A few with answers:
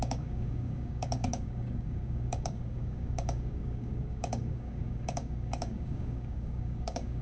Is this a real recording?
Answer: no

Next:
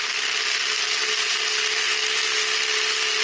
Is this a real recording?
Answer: yes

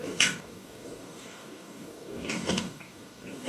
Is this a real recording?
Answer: no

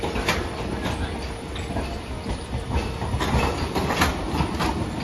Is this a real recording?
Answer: yes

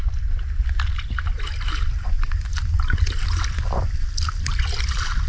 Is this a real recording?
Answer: yes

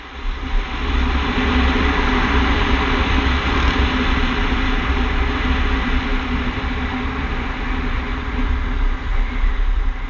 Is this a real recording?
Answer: yes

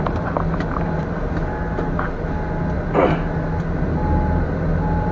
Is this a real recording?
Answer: yes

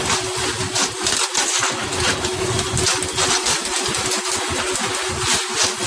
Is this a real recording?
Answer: yes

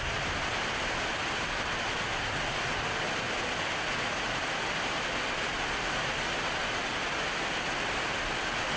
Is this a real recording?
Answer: yes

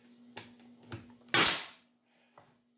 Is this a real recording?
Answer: yes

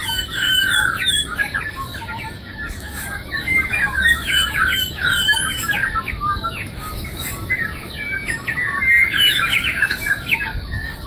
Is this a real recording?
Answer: no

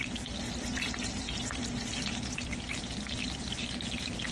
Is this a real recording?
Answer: yes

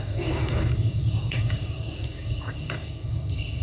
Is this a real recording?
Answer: no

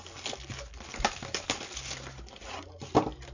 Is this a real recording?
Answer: yes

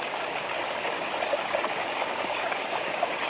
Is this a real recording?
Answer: no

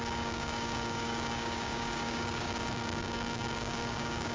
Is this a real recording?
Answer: no